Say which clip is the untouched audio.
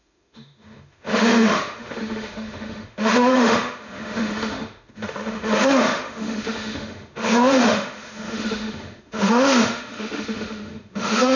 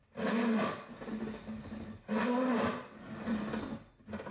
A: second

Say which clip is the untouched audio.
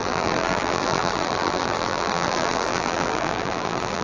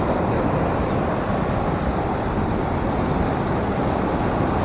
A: second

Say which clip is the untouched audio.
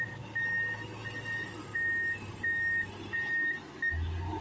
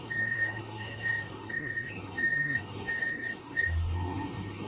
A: first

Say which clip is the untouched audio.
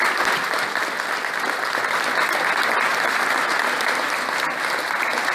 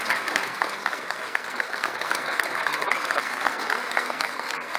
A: first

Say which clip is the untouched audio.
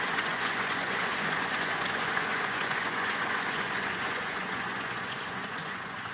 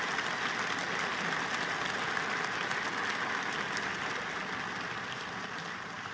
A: second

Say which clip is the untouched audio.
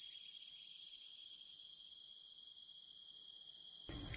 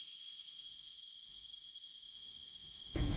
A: first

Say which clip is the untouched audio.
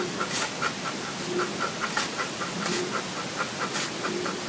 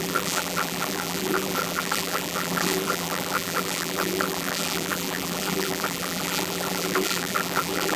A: first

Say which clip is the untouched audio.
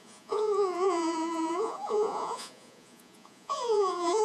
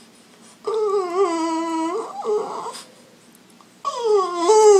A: second